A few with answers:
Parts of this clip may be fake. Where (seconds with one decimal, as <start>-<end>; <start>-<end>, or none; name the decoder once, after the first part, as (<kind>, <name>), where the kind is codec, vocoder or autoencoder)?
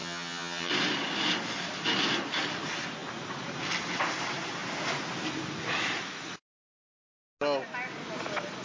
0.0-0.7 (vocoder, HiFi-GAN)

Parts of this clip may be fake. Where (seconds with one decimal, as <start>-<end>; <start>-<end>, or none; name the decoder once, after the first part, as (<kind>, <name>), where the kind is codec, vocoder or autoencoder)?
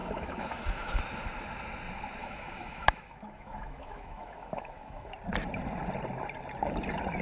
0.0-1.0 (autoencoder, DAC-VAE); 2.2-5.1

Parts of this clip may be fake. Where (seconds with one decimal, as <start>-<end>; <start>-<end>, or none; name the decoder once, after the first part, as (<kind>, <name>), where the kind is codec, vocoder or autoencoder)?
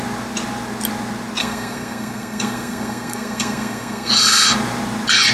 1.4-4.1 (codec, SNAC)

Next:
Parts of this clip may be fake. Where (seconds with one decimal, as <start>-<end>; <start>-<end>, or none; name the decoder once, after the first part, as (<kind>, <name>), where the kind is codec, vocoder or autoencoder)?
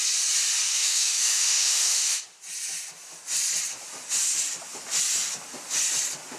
0.7-2.2 (autoencoder, DAC-VAE)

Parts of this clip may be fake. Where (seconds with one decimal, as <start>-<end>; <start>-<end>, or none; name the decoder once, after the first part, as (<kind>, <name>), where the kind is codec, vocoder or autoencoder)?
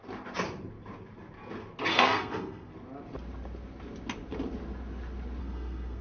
1.9-2.7 (codec, SNAC); 5.4-6.0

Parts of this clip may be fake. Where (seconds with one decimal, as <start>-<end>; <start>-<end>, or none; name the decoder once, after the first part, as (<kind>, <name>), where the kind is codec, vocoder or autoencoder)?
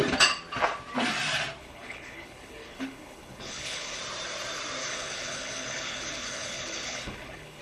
1.6-4.0 (codec, HILCodec); 4.8-7.6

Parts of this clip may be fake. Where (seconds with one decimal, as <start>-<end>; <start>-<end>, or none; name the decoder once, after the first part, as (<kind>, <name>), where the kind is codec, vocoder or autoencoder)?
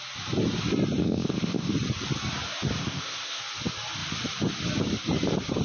1.0-1.7 (codec, ZipCodec); 2.8-3.4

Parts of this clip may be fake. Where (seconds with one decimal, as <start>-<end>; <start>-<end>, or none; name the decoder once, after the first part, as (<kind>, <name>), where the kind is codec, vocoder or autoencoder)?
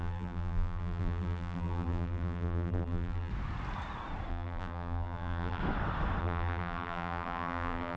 0.0-3.3 (vocoder, BigVGAN v2); 4.3-5.6; 6.2-8.0